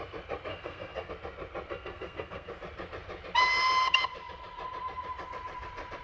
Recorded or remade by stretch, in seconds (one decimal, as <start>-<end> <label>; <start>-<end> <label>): 0.0-0.5 recorded; 0.5-1.1 remade; 1.1-1.7 recorded; 1.7-2.5 remade; 2.5-6.0 recorded